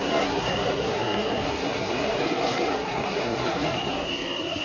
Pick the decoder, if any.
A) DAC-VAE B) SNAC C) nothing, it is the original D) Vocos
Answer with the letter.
B